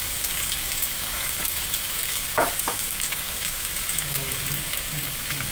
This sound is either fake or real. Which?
fake